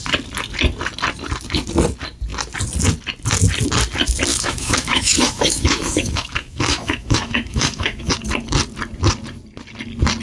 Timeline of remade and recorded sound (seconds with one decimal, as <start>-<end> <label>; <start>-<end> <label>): 0.0-4.3 recorded; 4.3-8.1 remade; 8.1-10.2 recorded